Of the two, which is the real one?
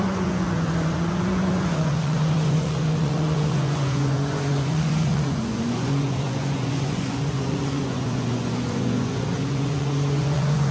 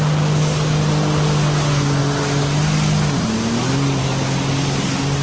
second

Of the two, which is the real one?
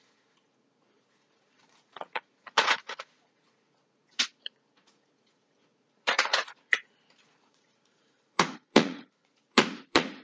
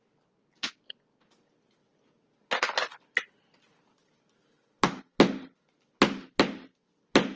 second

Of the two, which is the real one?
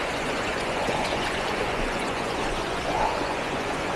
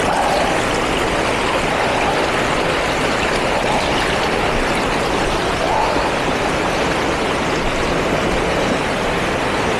second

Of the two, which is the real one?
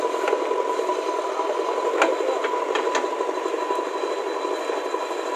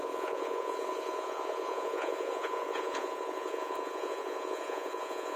first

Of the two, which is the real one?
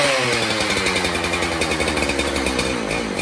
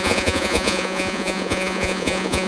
first